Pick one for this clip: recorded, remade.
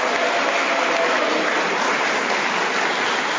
recorded